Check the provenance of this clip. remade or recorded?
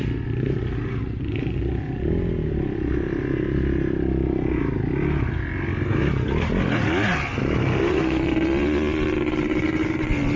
recorded